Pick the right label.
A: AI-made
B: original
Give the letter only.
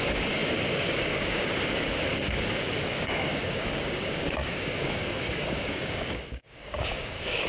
A